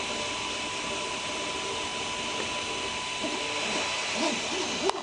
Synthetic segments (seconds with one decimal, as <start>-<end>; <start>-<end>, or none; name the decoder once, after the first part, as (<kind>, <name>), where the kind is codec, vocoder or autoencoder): none

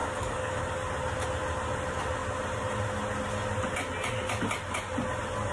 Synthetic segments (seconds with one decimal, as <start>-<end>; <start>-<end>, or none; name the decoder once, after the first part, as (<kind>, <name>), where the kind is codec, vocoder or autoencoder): 0.0-0.6 (codec, DAC)

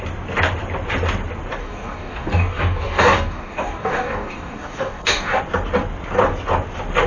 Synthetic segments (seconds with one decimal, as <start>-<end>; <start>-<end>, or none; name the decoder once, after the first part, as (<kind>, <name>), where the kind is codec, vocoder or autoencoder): 1.6-5.4 (codec, DAC)

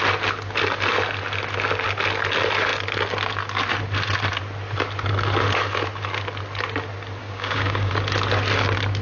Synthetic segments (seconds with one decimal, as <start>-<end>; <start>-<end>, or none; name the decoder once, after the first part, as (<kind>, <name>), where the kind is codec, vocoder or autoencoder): 7.2-7.9 (codec, DAC)

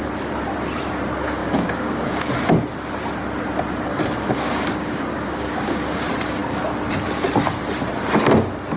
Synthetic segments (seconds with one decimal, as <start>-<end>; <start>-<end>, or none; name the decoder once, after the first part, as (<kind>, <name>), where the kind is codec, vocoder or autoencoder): 1.4-2.3 (codec, DAC); 3.9-6.0

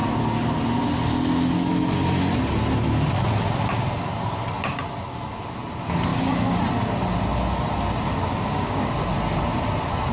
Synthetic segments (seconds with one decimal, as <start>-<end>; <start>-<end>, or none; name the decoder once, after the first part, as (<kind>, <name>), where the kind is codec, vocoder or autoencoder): 6.1-6.6 (codec, DAC); 8.3-8.9

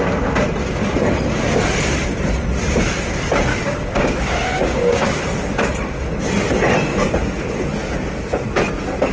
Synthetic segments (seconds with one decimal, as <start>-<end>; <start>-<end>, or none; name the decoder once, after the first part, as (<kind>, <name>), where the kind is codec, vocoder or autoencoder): 3.5-5.2 (codec, DAC)

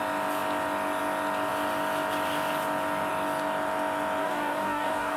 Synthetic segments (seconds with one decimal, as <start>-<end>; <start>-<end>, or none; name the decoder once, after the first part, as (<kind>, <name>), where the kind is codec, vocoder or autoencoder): 4.2-5.2 (codec, DAC)